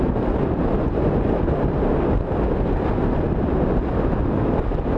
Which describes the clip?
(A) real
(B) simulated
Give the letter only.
A